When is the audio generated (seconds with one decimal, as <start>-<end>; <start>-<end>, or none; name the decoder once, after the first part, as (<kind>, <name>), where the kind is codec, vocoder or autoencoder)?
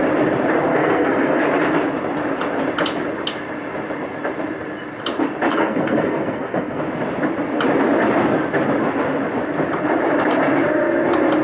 0.7-1.4 (codec, SNAC); 5.5-6.8